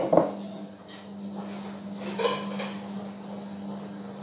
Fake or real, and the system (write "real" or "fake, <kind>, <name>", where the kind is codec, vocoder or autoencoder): real